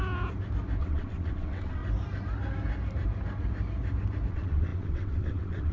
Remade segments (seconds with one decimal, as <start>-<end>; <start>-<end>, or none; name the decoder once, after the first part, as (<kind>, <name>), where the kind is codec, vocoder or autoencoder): 0.8-1.8 (vocoder, WaveNeXt); 4.3-5.7